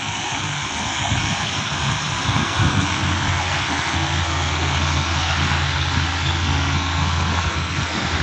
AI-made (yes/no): yes